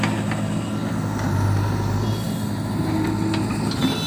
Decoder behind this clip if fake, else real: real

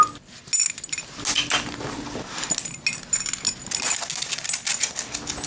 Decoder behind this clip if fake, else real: real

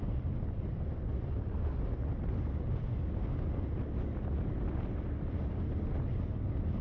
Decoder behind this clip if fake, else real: real